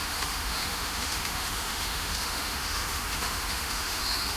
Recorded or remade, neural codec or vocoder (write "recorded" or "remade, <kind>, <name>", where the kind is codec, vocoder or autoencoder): remade, autoencoder, DAC-VAE